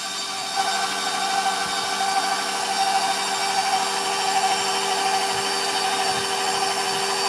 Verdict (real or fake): real